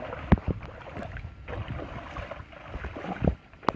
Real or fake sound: real